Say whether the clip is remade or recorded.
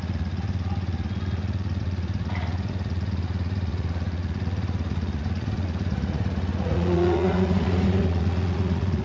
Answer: remade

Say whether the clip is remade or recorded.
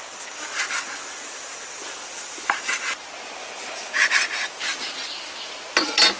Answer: recorded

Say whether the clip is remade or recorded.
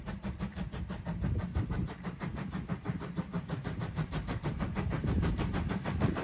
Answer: remade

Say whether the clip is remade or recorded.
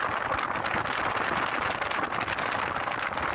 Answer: recorded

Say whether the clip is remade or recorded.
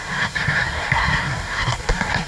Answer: remade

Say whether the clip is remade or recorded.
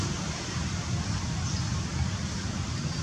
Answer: recorded